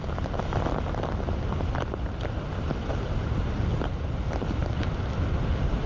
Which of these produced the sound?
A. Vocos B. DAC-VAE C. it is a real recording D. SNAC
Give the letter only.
C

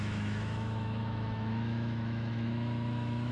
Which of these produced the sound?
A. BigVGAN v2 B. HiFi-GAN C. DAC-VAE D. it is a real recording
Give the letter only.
C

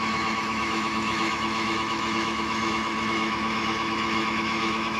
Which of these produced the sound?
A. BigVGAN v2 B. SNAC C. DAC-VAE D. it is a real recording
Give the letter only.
C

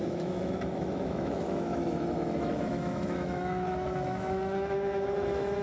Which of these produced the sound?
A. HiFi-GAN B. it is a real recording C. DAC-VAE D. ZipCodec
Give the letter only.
C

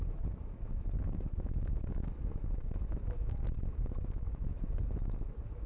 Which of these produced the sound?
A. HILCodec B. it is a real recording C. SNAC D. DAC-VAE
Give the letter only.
D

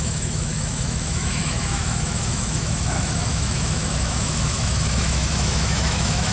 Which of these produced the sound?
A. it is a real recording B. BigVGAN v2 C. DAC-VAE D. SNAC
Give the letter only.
C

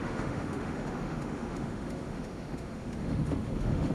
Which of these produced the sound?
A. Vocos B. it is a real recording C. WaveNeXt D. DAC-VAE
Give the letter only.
D